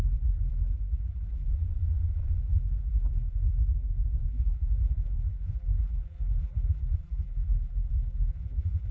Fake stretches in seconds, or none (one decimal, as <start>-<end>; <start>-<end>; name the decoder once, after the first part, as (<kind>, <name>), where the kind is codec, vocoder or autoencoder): 0.0-1.5 (vocoder, BigVGAN v2); 2.4-8.9